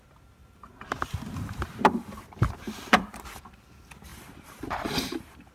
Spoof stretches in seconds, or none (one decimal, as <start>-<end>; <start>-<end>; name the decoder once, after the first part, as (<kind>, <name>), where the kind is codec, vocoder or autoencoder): 0.4-3.5 (vocoder, BigVGAN v2); 4.1-5.5

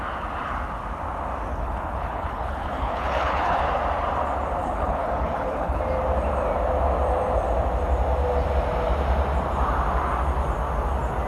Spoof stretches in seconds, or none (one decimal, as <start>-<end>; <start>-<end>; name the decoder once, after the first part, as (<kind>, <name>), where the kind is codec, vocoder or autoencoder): 1.5-3.6 (codec, HILCodec); 4.6-5.8

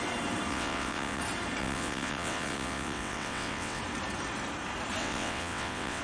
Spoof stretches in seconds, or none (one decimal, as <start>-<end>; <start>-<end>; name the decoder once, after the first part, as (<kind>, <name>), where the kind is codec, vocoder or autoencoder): 0.5-1.2 (vocoder, WaveNeXt); 1.6-3.8; 5.0-6.0

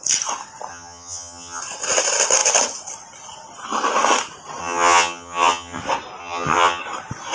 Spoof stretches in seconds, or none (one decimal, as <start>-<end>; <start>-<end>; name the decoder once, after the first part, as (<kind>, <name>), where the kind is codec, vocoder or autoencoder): 0.7-1.6 (vocoder, HiFi-GAN); 4.6-5.8; 6.2-6.8

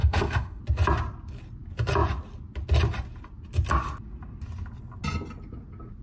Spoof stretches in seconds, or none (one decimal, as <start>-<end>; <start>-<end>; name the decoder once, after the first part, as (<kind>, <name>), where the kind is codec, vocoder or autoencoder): 0.0-0.6 (autoencoder, DAC-VAE)